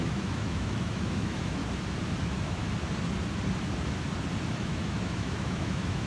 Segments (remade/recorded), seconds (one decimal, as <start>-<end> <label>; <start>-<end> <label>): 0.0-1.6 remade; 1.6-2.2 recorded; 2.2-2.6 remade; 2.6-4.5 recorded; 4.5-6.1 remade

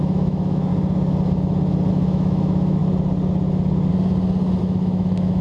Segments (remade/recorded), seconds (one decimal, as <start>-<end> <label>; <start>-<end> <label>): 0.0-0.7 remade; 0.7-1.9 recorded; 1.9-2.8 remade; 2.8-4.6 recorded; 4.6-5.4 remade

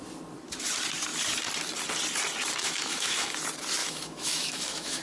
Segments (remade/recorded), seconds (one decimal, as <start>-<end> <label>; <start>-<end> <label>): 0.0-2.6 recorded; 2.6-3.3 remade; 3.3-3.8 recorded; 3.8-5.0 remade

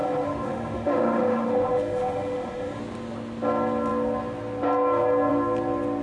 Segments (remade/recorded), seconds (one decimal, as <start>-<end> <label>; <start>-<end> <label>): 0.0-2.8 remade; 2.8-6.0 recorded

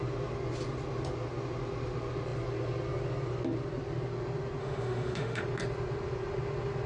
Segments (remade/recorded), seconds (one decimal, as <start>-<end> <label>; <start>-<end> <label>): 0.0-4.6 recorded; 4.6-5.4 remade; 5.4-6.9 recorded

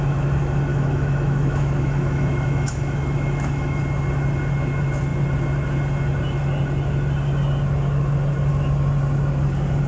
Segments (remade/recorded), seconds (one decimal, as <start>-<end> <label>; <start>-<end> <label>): 0.0-0.7 recorded; 0.7-3.8 remade; 3.8-9.9 recorded

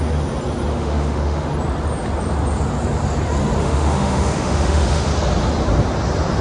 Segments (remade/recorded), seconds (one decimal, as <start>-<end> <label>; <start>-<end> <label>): 0.0-0.7 recorded; 0.7-1.5 remade; 1.5-3.6 recorded; 3.6-5.1 remade; 5.1-6.4 recorded

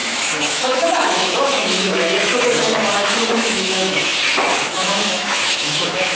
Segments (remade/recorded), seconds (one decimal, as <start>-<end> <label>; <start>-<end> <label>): 0.0-2.3 remade; 2.3-3.3 recorded; 3.3-4.1 remade; 4.1-4.6 recorded; 4.6-6.2 remade